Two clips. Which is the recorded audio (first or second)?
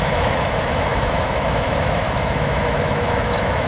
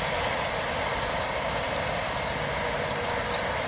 second